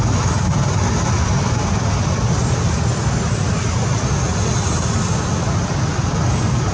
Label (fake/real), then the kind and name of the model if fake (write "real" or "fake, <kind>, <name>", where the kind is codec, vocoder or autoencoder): real